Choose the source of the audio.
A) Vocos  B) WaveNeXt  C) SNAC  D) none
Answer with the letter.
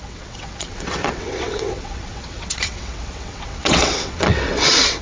B